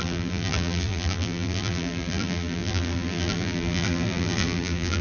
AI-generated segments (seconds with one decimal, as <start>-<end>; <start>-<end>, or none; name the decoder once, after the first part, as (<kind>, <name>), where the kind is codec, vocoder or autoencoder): 0.0-5.0 (vocoder, BigVGAN v2)